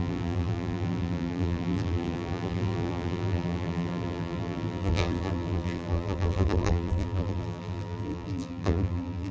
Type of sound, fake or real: fake